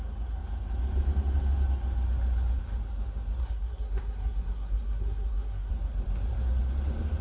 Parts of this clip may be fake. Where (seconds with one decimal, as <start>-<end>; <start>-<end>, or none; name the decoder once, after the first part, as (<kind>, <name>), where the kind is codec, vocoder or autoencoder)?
3.4-5.7 (codec, SNAC)